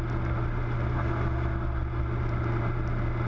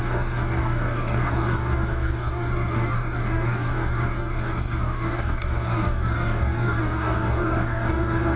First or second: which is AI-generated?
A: second